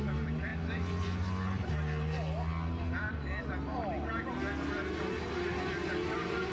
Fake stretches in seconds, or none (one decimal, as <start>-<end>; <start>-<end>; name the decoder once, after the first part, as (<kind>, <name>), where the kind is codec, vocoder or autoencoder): none